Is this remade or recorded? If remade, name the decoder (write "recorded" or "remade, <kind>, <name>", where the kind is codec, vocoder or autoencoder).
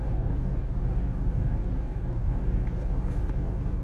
remade, codec, DAC